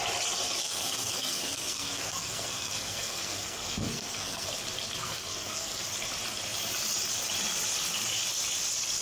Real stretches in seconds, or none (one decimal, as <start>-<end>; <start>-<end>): 0.0-0.6; 4.5-5.0; 5.8-9.0